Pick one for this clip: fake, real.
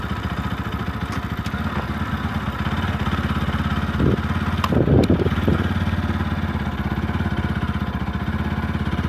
real